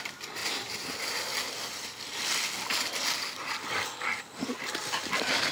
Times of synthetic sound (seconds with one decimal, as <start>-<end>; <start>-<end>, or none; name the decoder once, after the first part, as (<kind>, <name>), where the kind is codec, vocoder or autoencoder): 0.0-1.3 (vocoder, BigVGAN v2); 4.6-5.5